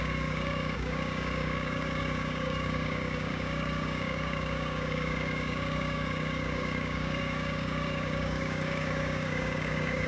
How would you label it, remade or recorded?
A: remade